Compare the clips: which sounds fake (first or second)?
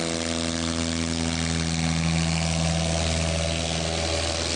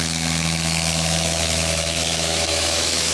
second